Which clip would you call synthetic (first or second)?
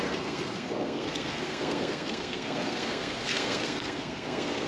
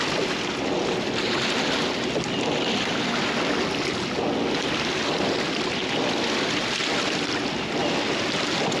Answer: first